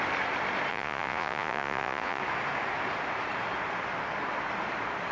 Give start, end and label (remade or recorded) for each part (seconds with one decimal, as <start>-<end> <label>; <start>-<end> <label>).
0.0-0.7 recorded; 0.7-2.2 remade; 2.2-5.1 recorded